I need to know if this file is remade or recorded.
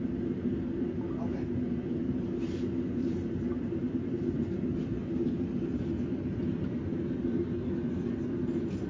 recorded